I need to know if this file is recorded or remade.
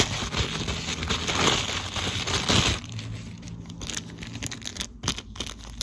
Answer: recorded